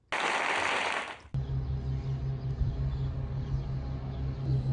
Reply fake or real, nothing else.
real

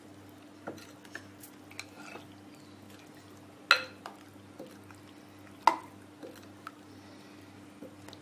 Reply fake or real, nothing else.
real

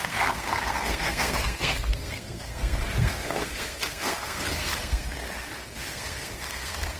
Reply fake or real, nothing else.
fake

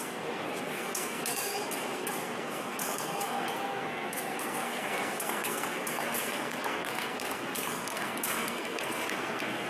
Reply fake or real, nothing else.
fake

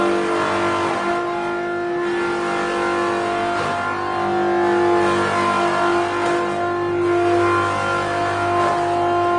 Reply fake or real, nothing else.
real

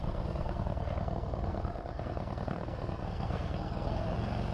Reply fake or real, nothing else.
fake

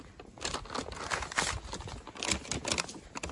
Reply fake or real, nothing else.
real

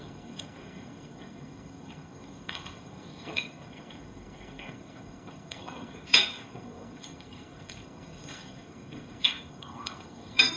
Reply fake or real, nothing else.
fake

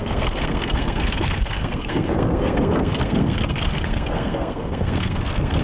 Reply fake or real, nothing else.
fake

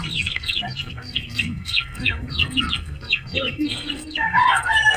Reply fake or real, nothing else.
fake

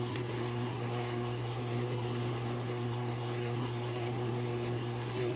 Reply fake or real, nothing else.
fake